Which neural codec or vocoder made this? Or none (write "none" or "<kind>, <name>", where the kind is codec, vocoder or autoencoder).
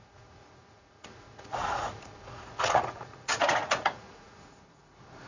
vocoder, Vocos